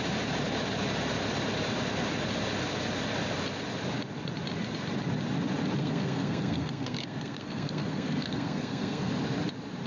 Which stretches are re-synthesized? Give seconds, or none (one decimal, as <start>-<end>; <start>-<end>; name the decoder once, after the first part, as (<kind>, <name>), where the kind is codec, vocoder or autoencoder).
5.8-9.1 (codec, SNAC)